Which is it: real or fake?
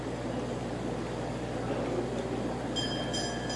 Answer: real